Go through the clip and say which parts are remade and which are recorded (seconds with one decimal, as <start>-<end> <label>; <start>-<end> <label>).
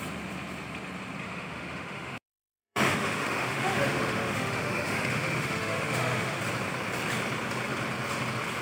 0.0-1.2 recorded; 1.2-6.4 remade; 6.4-8.6 recorded